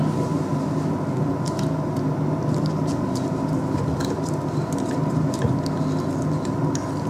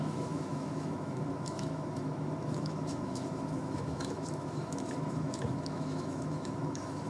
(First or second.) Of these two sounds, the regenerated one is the second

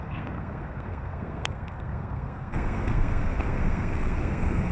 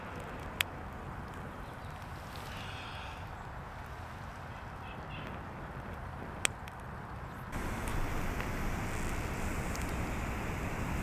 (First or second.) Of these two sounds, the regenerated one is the first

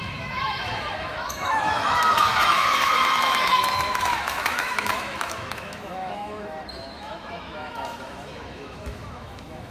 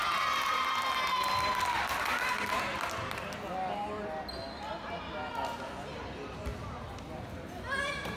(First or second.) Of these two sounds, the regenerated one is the first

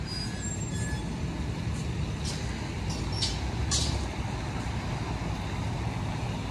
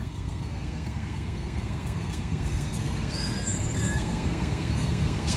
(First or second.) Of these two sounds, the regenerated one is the second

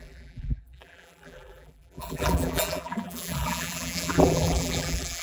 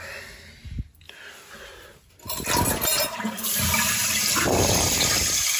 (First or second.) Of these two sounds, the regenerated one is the first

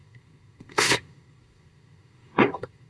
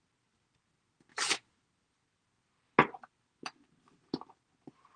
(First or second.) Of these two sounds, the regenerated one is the first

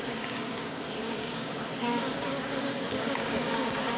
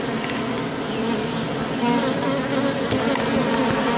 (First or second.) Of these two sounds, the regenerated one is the first